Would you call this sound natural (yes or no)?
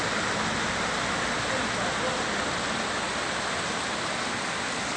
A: yes